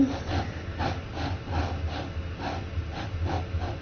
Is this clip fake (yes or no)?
no